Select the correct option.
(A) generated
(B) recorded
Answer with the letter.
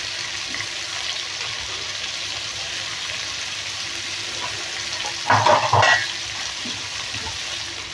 B